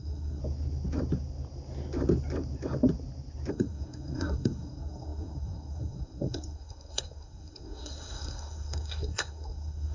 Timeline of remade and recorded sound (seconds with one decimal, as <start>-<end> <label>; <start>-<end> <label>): 0.0-0.4 remade; 0.4-3.5 recorded; 3.5-9.9 remade